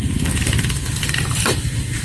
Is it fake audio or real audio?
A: fake